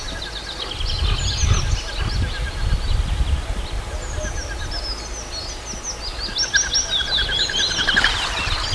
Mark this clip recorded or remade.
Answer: recorded